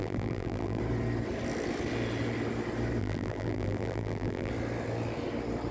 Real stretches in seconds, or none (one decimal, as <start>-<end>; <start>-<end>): 0.8-3.0; 4.5-5.7